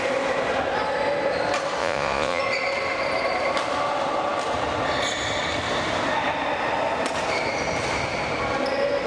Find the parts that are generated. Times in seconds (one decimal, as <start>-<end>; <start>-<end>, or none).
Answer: 1.8-2.4